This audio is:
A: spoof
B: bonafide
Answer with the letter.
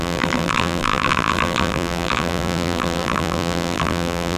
A